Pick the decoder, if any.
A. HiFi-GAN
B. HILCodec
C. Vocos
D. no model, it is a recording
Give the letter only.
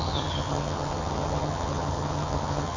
A